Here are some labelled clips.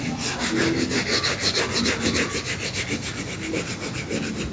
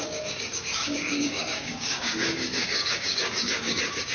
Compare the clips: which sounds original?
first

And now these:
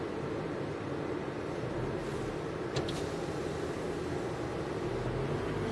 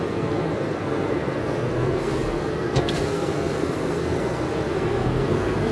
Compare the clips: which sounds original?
first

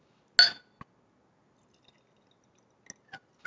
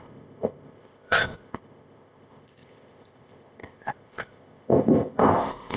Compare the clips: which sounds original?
first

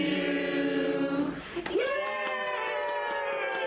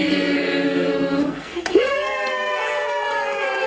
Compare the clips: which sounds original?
first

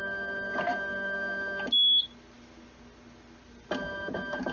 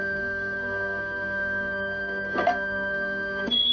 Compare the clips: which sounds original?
first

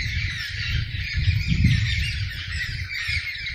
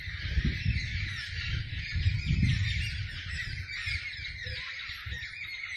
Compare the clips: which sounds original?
second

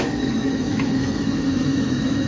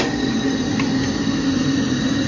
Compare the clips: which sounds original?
second